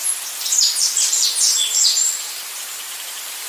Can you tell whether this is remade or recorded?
remade